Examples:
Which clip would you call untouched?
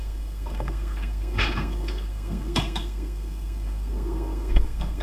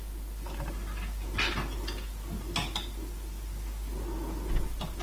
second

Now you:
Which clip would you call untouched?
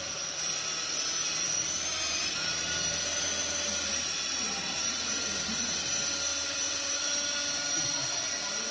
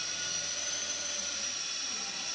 first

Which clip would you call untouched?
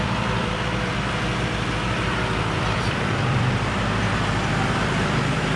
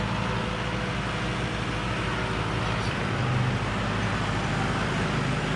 second